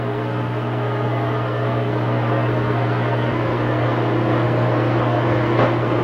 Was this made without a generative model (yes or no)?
no